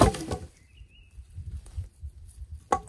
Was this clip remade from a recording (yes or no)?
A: no